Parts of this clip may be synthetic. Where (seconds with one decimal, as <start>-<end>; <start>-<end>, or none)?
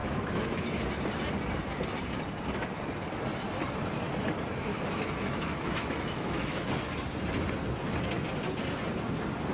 0.0-0.6; 4.7-6.7